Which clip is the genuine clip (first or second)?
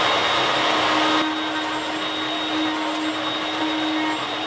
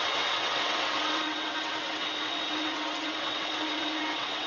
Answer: first